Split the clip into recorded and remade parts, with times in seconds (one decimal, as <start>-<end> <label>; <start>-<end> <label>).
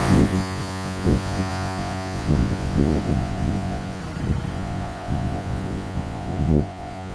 0.0-4.0 remade; 4.0-4.5 recorded; 4.5-7.1 remade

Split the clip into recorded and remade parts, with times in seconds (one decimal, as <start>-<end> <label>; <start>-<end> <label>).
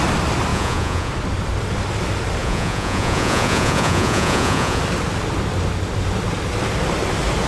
0.0-0.5 recorded; 0.5-1.1 remade; 1.1-2.4 recorded; 2.4-4.8 remade; 4.8-7.5 recorded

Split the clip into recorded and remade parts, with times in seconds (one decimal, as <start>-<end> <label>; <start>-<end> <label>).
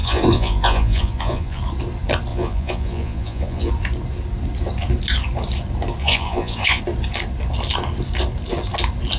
0.0-1.6 remade; 1.6-2.3 recorded; 2.3-3.7 remade; 3.7-6.0 recorded; 6.0-6.8 remade; 6.8-9.2 recorded